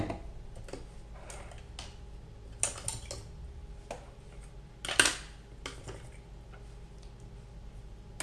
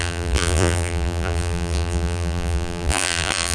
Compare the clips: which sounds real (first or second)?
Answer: first